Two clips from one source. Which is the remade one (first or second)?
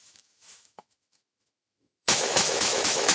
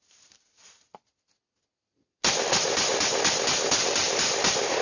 first